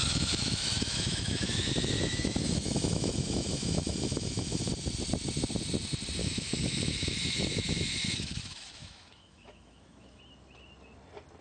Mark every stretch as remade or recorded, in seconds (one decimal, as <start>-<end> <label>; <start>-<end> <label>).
0.0-4.7 remade; 4.7-6.2 recorded; 6.2-10.2 remade; 10.2-11.4 recorded